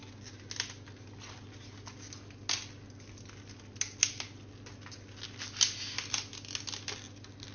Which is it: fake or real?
real